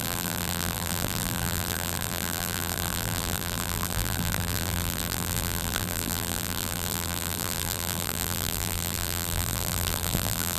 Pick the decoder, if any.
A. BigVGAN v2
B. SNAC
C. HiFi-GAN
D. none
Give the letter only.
A